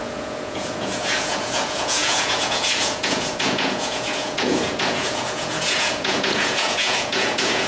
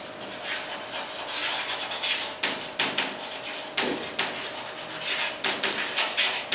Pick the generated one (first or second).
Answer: first